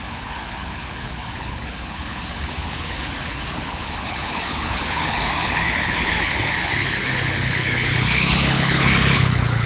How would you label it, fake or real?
fake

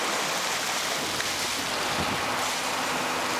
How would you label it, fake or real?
real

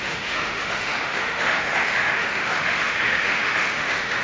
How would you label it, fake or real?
fake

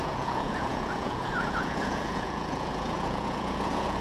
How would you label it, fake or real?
fake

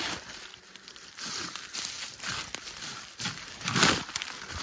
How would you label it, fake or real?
fake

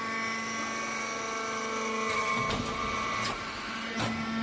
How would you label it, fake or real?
real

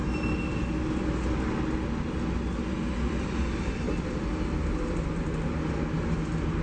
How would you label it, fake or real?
real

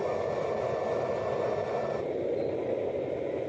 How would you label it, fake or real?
real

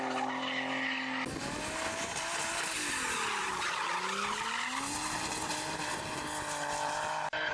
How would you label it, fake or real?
real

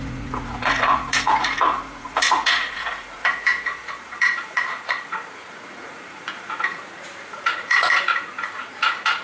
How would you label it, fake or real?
fake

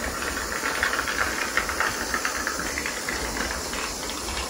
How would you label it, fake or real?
real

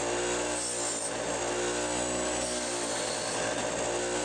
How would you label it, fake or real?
real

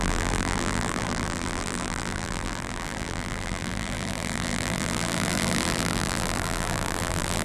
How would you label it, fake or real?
fake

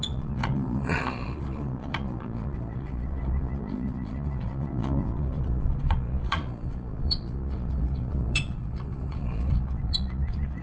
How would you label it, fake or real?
fake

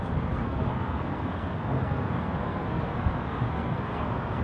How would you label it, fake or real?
fake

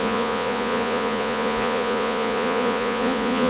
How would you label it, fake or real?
fake